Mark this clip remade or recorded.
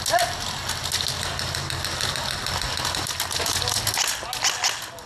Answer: recorded